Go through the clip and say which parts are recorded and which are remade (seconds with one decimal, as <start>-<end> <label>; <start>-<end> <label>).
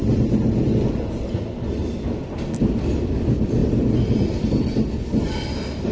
0.0-3.6 recorded; 3.6-4.3 remade; 4.3-5.9 recorded